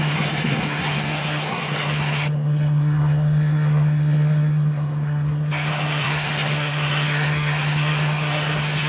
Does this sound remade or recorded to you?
remade